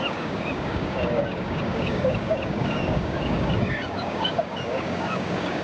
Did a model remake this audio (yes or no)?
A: yes